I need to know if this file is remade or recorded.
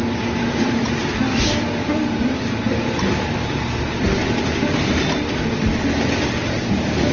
recorded